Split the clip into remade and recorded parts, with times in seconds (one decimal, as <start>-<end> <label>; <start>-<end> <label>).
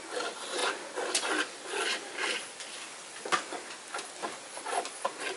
0.0-5.4 recorded